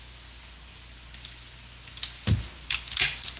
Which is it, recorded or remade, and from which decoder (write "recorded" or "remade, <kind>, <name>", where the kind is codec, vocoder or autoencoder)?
recorded